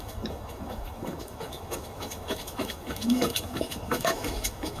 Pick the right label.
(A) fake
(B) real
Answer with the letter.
A